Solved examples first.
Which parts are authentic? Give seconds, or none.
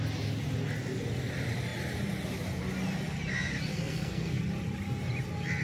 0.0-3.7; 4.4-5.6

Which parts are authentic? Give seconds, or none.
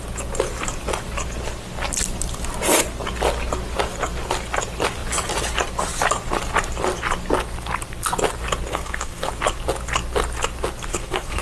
0.0-8.7; 9.3-10.9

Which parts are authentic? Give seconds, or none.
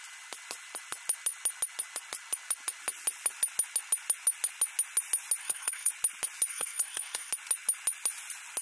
0.0-5.4; 5.9-6.5; 7.3-8.6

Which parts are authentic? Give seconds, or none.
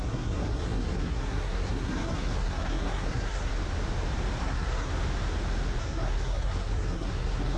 3.5-4.4; 4.9-5.8